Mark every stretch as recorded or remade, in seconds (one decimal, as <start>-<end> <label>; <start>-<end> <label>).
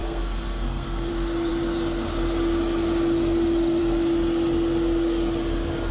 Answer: 0.0-1.1 remade; 1.1-5.9 recorded